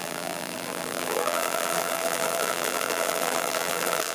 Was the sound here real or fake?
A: fake